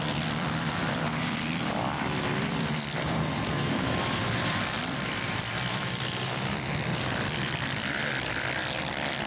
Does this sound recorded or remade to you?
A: remade